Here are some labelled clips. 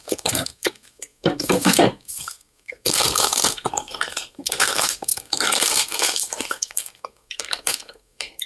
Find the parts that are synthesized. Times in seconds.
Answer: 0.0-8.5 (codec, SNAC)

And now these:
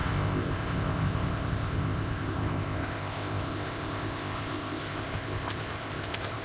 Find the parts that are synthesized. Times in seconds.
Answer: 0.0-6.4 (codec, ZipCodec)